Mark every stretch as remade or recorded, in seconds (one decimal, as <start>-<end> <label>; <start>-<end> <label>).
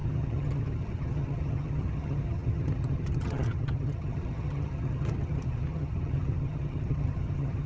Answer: 0.0-7.7 remade